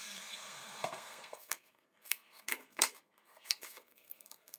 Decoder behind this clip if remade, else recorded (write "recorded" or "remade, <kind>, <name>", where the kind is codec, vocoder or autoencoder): remade, codec, SNAC